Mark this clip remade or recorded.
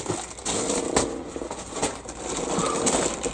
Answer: recorded